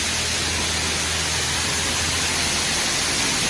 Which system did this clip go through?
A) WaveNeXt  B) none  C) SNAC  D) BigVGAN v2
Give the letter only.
B